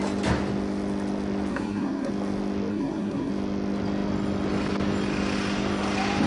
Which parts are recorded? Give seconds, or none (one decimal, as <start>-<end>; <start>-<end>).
0.0-1.5; 2.1-2.7; 3.3-6.3